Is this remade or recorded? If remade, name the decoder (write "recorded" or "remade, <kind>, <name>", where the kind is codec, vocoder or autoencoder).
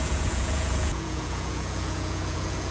remade, vocoder, Vocos